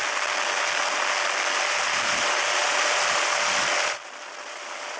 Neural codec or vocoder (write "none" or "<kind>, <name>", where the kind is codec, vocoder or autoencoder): none